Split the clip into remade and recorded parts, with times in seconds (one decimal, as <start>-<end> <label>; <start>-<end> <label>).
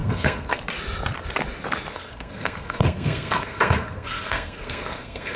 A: 0.0-0.6 remade; 0.6-1.9 recorded; 1.9-5.4 remade